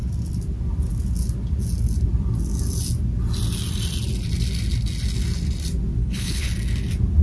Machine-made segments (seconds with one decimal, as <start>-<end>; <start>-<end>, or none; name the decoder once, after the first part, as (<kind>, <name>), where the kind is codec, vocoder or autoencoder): 6.0-6.5 (codec, HILCodec)